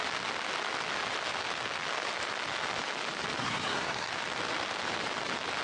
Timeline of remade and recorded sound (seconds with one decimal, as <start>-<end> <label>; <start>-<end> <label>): 0.0-3.4 recorded; 3.4-4.1 remade; 4.1-5.6 recorded